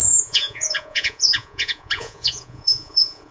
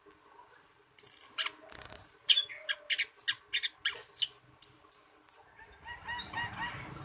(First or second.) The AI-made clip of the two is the first